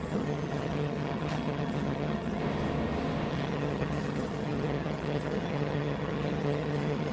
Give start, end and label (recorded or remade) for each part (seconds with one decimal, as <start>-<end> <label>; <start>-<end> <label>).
0.0-2.4 remade; 2.4-3.3 recorded; 3.3-7.1 remade